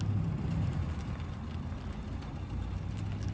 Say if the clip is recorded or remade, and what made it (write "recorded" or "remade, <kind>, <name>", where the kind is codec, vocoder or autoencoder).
recorded